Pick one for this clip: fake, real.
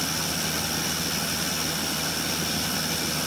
real